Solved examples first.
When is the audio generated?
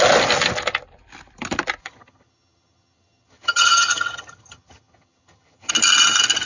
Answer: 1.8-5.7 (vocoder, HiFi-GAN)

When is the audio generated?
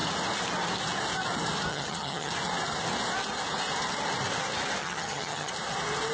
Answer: 1.7-2.3 (vocoder, HiFi-GAN); 4.8-5.5